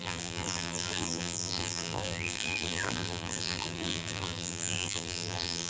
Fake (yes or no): yes